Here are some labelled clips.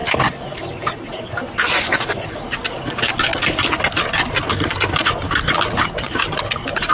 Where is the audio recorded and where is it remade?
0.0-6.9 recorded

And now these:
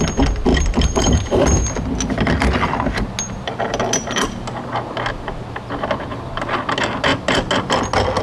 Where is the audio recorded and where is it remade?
0.0-0.5 recorded; 0.5-1.2 remade; 1.2-8.2 recorded

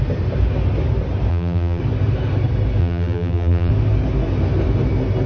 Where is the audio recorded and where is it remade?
0.0-1.3 recorded; 1.3-1.8 remade; 1.8-2.8 recorded; 2.8-3.7 remade; 3.7-5.3 recorded

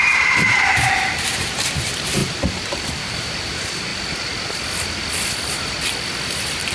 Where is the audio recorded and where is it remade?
0.0-2.2 remade; 2.2-3.0 recorded; 3.0-3.9 remade; 3.9-6.7 recorded

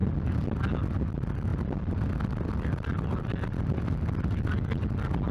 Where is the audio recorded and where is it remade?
0.0-0.6 remade; 0.6-1.5 recorded; 1.5-3.8 remade; 3.8-5.3 recorded

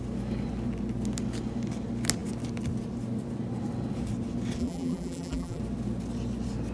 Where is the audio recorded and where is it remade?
0.0-4.6 recorded; 4.6-5.6 remade; 5.6-6.7 recorded

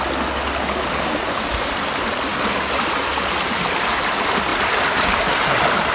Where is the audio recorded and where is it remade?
0.0-5.9 recorded